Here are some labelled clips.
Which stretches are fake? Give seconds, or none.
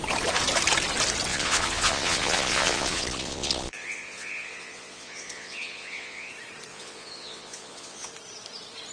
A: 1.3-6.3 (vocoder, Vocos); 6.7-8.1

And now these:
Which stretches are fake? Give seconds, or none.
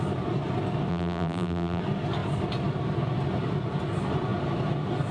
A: 0.9-1.8 (vocoder, BigVGAN v2)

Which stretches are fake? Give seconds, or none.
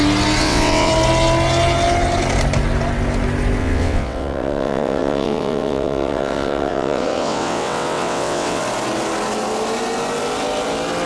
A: 0.4-0.9 (vocoder, WaveNeXt); 3.6-8.6